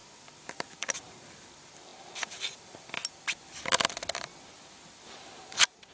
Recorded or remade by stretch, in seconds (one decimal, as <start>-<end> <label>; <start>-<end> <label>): 0.0-5.9 recorded